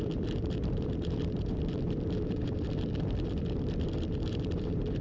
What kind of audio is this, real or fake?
fake